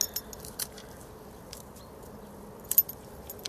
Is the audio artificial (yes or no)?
no